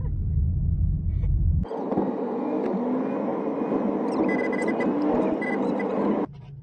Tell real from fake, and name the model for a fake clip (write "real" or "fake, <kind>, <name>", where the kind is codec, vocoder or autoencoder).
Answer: real